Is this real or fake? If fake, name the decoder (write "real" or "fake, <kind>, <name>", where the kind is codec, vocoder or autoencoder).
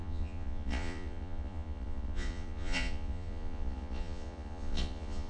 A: fake, vocoder, Vocos